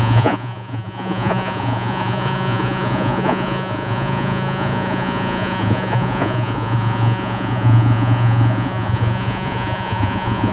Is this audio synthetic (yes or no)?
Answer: yes